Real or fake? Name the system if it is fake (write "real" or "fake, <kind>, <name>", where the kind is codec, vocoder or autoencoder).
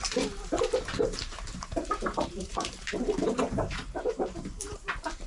fake, vocoder, BigVGAN v2